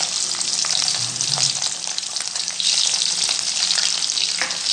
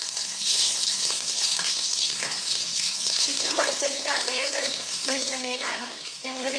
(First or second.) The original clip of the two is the first